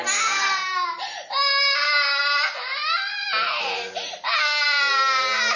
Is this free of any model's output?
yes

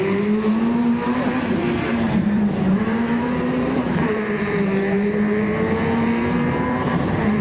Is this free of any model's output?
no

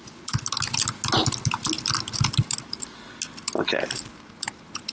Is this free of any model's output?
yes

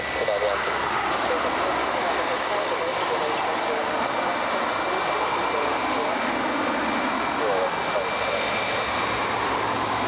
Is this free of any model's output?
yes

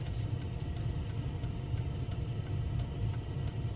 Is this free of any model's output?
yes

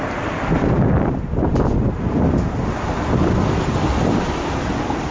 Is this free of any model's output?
yes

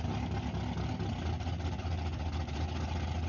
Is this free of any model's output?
yes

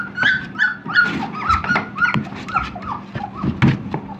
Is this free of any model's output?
yes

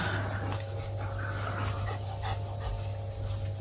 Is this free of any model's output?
yes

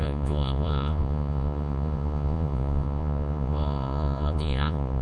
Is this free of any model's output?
no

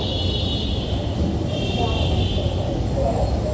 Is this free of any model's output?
yes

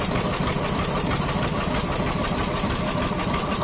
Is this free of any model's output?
yes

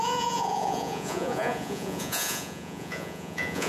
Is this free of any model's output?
no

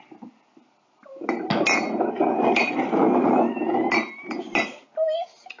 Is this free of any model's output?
yes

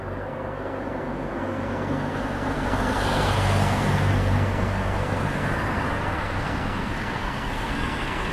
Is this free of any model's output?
no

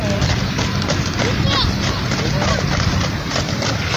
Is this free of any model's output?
yes